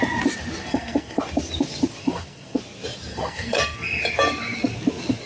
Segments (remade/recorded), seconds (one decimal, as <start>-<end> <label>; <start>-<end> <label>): 0.0-0.6 recorded; 0.6-1.2 remade; 1.2-2.0 recorded; 2.0-2.6 remade; 2.6-3.1 recorded; 3.1-4.0 remade; 4.0-5.3 recorded